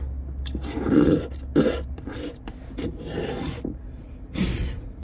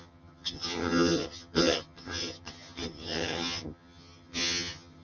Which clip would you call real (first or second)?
first